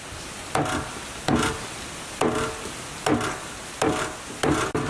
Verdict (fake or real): real